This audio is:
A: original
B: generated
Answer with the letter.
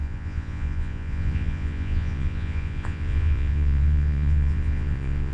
B